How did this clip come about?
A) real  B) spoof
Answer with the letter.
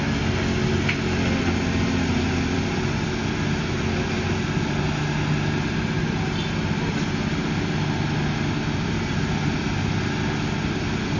A